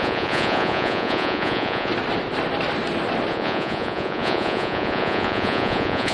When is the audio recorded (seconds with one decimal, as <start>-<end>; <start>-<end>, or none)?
1.9-3.3